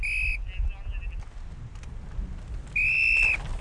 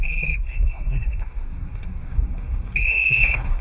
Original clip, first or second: first